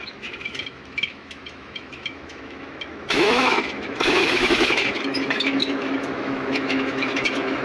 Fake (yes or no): yes